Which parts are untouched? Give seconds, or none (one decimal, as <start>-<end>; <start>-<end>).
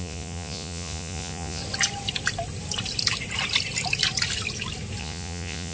1.6-5.0